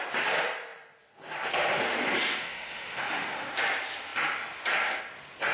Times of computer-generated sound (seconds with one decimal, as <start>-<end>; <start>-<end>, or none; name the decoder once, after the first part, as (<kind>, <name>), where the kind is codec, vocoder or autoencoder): 2.4-3.5 (autoencoder, DAC-VAE)